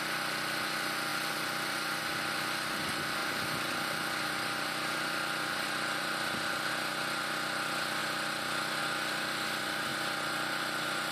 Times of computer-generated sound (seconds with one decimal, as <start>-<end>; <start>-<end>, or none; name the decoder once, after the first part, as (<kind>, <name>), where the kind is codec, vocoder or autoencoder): 1.1-2.0 (vocoder, BigVGAN v2); 3.2-6.7